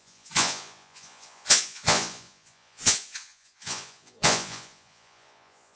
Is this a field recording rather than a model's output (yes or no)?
no